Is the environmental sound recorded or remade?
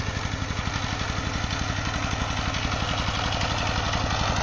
recorded